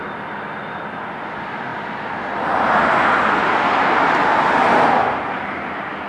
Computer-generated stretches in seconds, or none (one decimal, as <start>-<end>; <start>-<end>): none